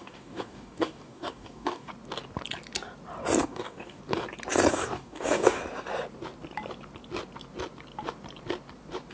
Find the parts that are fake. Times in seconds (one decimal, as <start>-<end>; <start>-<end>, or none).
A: 0.0-1.9; 3.4-4.0; 4.7-5.6